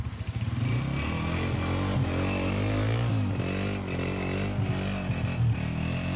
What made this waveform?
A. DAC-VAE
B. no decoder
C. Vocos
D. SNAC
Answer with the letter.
B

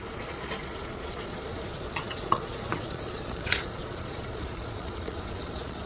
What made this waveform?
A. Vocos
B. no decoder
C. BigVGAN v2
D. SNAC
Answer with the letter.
A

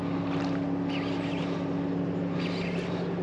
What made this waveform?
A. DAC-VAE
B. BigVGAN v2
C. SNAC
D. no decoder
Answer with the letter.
D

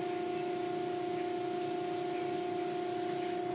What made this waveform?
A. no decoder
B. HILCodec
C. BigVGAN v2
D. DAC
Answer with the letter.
A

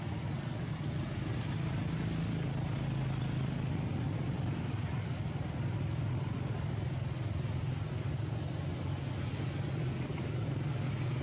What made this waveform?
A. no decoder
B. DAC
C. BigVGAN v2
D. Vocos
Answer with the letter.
A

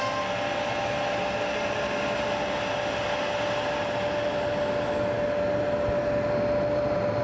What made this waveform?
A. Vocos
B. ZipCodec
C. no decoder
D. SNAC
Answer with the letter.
C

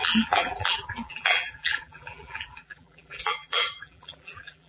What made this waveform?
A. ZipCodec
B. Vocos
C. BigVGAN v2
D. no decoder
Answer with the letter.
C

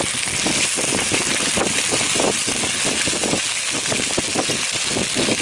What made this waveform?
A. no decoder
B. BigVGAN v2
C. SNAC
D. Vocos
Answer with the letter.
A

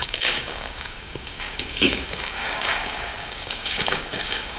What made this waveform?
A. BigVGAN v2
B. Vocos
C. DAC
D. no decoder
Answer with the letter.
C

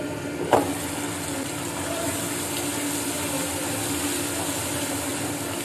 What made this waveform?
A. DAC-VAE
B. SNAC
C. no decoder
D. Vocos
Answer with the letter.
C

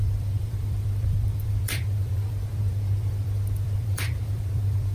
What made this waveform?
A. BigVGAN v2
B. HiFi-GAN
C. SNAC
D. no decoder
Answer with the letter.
A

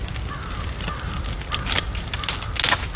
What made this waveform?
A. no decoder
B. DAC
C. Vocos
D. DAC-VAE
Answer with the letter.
A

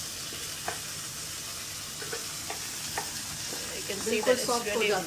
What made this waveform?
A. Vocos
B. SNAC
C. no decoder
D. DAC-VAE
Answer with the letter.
C